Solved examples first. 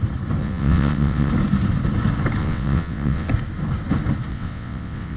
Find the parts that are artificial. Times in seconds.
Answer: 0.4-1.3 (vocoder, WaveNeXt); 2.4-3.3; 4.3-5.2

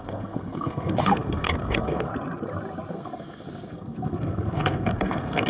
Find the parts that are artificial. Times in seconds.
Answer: 0.0-2.1 (codec, SNAC); 2.9-5.5

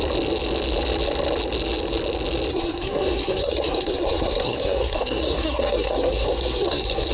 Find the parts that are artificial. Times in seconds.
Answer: 2.5-7.1 (codec, SNAC)